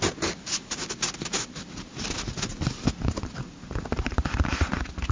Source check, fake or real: real